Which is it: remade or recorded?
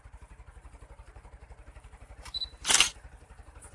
remade